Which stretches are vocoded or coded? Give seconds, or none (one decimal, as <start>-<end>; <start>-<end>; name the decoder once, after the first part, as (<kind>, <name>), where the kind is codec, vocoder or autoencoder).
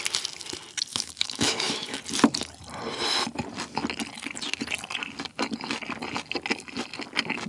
0.9-2.0 (autoencoder, DAC-VAE)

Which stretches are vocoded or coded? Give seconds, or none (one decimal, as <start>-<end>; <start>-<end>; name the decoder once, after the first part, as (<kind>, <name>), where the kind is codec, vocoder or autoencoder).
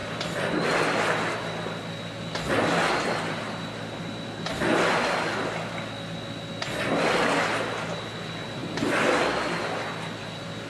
none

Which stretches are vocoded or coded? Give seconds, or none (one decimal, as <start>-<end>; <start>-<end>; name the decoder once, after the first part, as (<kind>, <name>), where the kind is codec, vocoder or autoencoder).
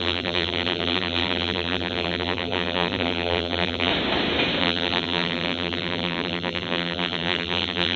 0.0-3.9 (vocoder, BigVGAN v2); 4.6-8.0